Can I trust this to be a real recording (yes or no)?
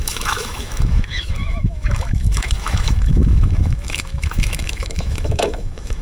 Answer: no